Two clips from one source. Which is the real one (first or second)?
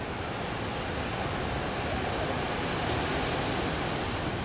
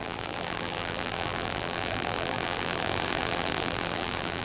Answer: first